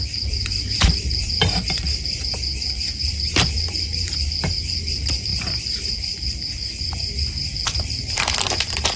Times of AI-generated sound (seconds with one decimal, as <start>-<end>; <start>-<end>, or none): 0.0-9.0